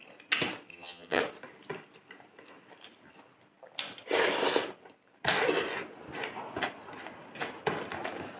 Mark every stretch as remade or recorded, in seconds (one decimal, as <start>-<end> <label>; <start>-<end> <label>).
0.0-0.7 recorded; 0.7-1.2 remade; 1.2-8.4 recorded